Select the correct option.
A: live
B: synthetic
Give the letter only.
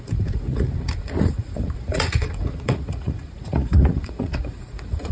B